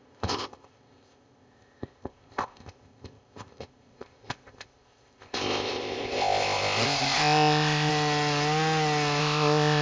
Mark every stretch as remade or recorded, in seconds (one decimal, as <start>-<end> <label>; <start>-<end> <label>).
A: 0.0-7.9 remade; 7.9-9.2 recorded; 9.2-9.8 remade